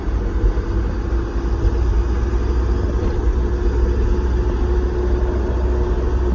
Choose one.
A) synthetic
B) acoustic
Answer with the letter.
B